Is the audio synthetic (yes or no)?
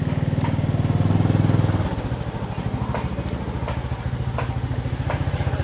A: no